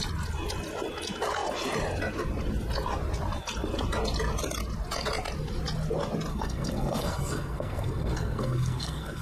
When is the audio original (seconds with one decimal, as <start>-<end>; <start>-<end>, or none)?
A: 0.0-6.3

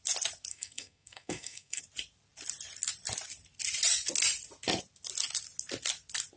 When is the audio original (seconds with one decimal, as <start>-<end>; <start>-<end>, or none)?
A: 0.0-0.5; 1.8-6.4